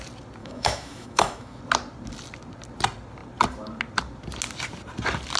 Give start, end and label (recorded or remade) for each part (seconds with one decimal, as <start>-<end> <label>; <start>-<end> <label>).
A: 0.0-0.4 recorded; 0.4-1.6 remade; 1.6-5.4 recorded